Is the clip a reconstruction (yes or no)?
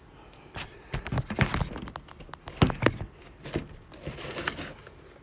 no